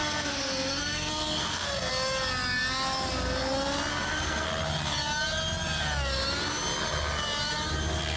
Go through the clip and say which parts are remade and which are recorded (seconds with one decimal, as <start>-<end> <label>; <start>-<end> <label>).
0.0-1.9 remade; 1.9-3.9 recorded; 3.9-4.5 remade; 4.5-8.2 recorded